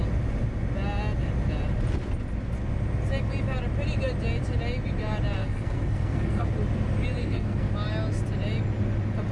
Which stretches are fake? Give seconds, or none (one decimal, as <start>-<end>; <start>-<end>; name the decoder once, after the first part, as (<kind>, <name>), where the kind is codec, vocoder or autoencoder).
5.4-6.5 (codec, SNAC); 7.2-7.7